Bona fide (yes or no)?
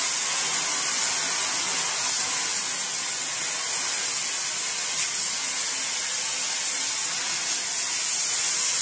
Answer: yes